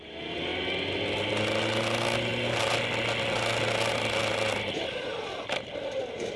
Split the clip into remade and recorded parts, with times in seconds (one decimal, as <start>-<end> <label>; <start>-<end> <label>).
0.0-6.4 recorded